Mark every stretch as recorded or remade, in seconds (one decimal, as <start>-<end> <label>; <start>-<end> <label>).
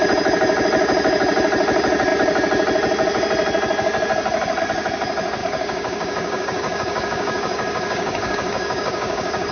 0.0-5.4 recorded; 5.4-9.5 remade